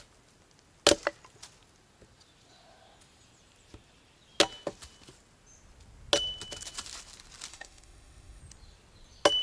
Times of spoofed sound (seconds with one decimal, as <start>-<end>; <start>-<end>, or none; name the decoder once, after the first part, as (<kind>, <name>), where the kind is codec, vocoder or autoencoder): 7.5-8.4 (autoencoder, DAC-VAE)